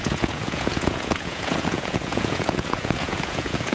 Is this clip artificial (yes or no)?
yes